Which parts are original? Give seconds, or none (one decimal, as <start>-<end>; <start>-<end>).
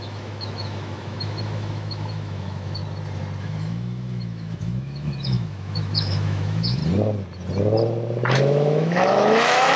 2.8-3.4; 6.8-8.3